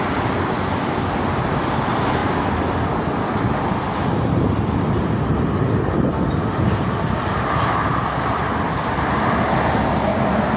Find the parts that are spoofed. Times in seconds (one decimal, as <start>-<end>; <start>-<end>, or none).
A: none